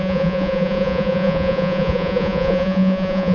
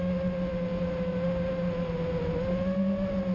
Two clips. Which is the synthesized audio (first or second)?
first